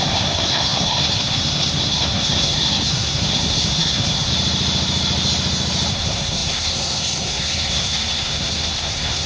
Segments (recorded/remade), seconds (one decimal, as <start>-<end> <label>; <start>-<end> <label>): 0.0-4.3 remade; 4.3-5.9 recorded; 5.9-9.3 remade